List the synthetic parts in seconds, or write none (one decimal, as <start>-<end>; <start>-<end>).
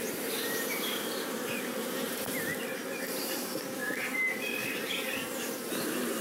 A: 0.0-2.5; 3.2-6.2